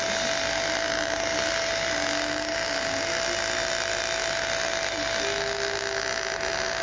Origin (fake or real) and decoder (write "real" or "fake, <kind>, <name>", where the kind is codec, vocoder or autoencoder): real